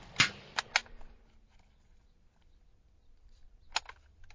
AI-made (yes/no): no